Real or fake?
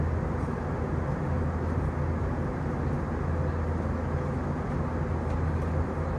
real